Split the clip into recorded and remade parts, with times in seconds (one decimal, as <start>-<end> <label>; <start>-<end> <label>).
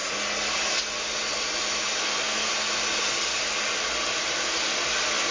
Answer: 0.0-2.0 recorded; 2.0-2.5 remade; 2.5-5.3 recorded